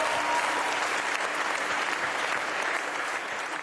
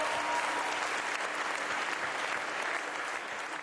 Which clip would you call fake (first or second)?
first